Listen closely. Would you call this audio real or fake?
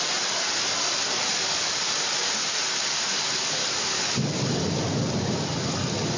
real